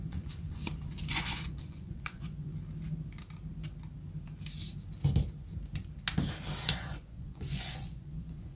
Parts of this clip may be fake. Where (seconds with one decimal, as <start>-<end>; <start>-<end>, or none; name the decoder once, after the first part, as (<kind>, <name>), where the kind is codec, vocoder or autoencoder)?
0.0-0.6 (vocoder, Vocos); 1.1-2.5; 6.6-8.6